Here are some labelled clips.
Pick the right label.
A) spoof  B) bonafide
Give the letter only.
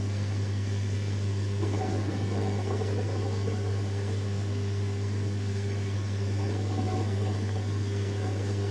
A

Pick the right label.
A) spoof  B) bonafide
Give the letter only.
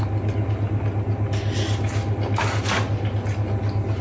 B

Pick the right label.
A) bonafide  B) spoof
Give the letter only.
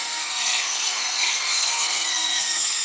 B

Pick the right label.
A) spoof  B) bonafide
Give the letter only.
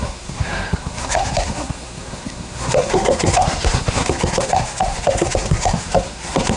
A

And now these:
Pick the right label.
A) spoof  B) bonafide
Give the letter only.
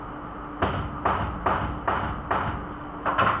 B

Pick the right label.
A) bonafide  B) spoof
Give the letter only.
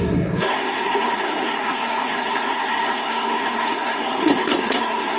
B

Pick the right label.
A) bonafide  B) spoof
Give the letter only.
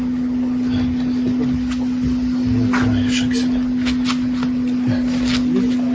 A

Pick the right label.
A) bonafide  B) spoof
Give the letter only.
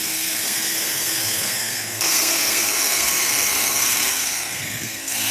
B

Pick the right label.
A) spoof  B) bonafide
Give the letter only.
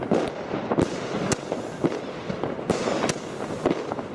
B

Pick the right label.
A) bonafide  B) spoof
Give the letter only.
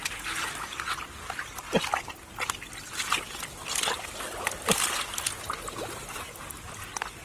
A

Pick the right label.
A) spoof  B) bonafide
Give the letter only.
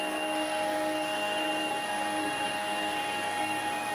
A